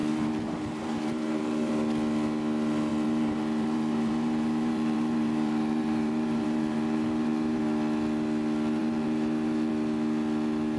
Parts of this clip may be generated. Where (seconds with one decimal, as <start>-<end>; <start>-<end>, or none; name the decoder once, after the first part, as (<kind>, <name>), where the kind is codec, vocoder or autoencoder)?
0.0-1.7 (vocoder, BigVGAN v2); 2.9-7.6; 8.8-9.7